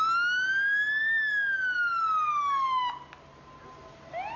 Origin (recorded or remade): recorded